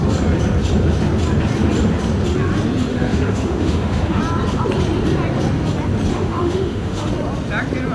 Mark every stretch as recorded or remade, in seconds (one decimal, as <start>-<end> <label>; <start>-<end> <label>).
0.0-2.9 recorded; 2.9-4.2 remade; 4.2-6.1 recorded; 6.1-7.1 remade; 7.1-7.9 recorded